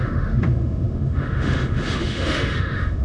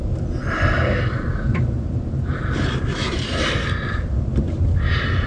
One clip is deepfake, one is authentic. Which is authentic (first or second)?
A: second